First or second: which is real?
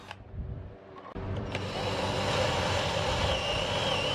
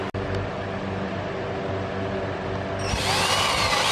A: second